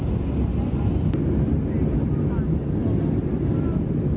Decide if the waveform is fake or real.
real